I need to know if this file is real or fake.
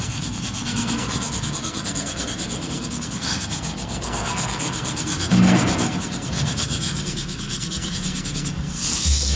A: fake